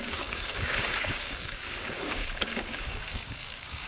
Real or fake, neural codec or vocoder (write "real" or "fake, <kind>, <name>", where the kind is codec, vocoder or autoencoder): fake, codec, DAC